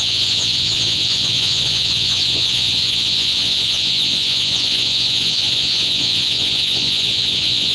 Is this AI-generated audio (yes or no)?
yes